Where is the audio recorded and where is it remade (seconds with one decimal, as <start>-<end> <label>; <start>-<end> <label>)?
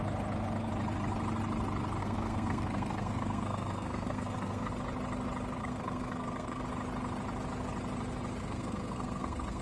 0.0-2.0 recorded; 2.0-4.7 remade; 4.7-5.6 recorded; 5.6-6.6 remade; 6.6-8.4 recorded; 8.4-9.6 remade